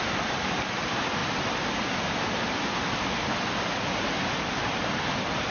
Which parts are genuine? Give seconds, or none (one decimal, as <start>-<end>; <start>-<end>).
1.2-4.5